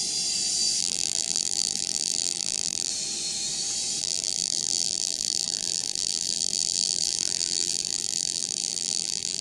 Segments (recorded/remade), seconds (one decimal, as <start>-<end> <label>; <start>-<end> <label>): 0.0-0.8 recorded; 0.8-2.9 remade; 2.9-4.0 recorded; 4.0-9.4 remade